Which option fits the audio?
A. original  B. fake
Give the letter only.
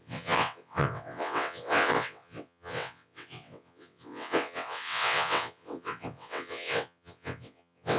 B